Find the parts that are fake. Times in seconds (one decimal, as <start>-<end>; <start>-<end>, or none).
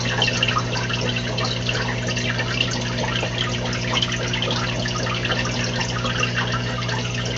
none